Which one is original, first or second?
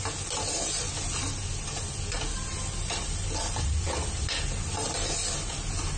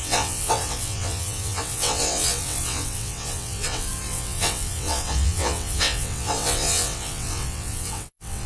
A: first